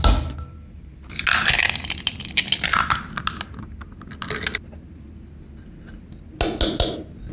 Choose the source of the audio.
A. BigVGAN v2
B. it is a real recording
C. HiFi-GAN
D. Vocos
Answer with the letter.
B